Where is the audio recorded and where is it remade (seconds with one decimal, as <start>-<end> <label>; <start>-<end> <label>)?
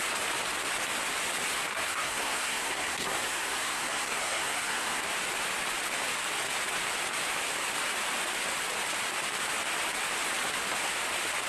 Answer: 0.0-1.7 recorded; 1.7-5.0 remade; 5.0-11.5 recorded